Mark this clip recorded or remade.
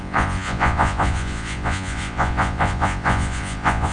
remade